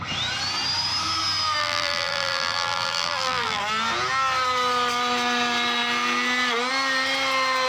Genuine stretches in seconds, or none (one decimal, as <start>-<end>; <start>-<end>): 0.0-1.6; 3.6-7.7